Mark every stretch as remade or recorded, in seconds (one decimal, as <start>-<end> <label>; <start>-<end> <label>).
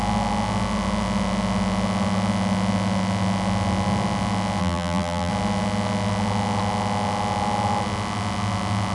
0.0-4.6 recorded; 4.6-5.3 remade; 5.3-8.9 recorded